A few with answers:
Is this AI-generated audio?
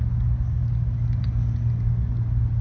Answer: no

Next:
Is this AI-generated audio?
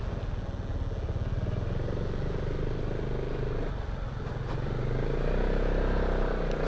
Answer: no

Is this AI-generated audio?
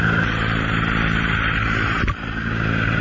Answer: no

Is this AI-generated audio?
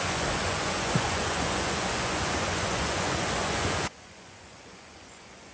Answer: yes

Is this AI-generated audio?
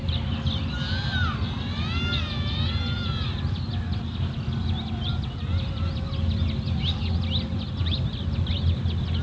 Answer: no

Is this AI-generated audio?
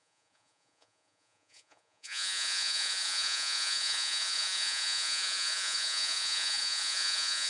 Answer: yes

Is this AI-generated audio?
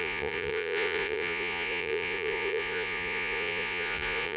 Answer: yes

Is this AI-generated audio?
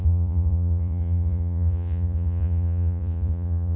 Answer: yes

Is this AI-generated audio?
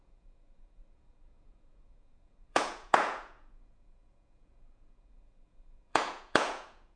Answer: yes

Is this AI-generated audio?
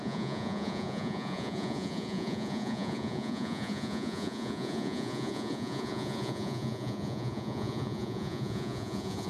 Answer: yes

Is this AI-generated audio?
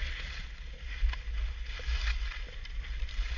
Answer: no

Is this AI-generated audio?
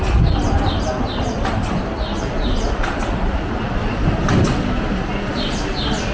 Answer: no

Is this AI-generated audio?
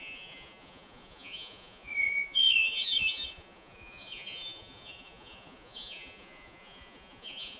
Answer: yes